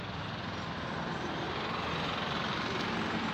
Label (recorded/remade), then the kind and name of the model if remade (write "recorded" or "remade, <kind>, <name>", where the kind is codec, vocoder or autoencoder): recorded